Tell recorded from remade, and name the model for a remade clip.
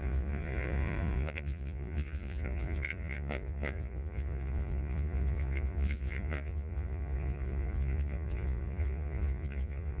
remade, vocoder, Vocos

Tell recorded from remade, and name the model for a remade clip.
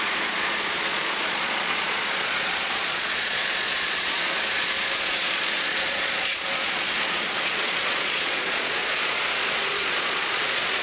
remade, vocoder, Vocos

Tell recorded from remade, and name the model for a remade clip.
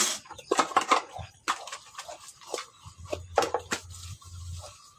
recorded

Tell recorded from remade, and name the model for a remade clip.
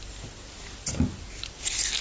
recorded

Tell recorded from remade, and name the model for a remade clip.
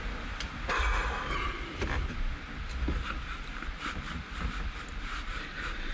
recorded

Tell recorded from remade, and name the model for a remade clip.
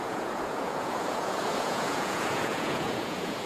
remade, vocoder, Vocos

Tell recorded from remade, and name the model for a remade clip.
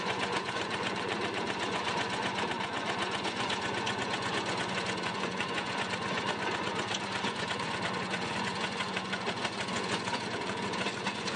remade, vocoder, Vocos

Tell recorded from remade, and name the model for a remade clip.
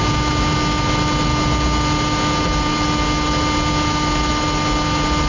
recorded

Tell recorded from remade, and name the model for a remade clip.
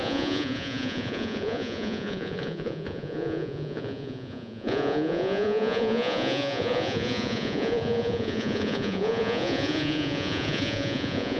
remade, vocoder, Vocos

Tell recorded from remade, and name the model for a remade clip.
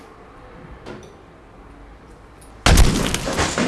recorded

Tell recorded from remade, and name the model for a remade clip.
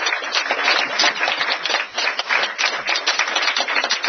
recorded